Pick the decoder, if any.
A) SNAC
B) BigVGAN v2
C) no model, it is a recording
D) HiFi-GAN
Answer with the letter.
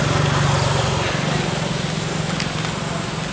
C